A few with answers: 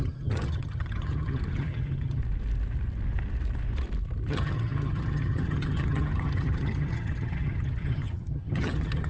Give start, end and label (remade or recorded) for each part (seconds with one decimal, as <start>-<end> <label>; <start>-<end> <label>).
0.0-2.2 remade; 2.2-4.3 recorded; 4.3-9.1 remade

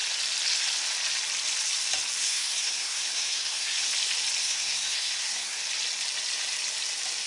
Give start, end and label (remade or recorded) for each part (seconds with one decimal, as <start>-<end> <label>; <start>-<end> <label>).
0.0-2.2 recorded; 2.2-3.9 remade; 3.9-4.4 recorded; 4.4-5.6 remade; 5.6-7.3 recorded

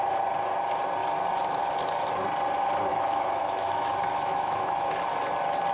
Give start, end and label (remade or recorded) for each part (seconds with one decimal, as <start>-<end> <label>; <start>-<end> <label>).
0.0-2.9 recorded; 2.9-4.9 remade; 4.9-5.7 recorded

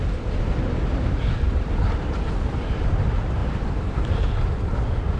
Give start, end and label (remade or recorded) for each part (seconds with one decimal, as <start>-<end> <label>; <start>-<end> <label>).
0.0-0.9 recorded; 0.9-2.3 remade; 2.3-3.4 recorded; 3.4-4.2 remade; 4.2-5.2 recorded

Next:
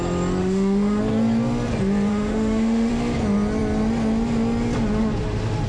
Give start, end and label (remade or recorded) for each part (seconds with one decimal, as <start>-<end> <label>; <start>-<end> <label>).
0.0-0.4 recorded; 0.4-1.0 remade; 1.0-2.1 recorded; 2.1-2.9 remade; 2.9-5.7 recorded